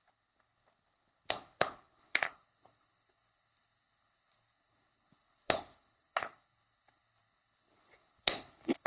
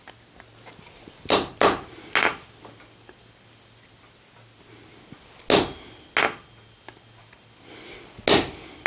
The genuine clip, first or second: second